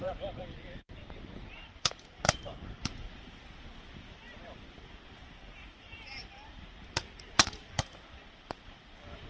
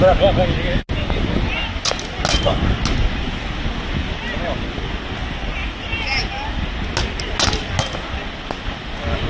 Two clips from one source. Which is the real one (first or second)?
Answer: second